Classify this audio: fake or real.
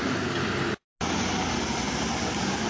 real